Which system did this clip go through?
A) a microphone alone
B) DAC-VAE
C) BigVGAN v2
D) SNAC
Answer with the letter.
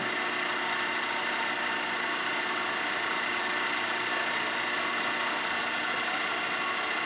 A